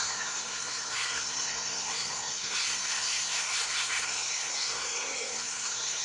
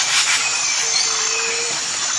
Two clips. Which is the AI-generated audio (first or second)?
first